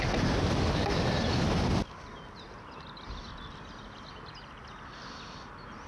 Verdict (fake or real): real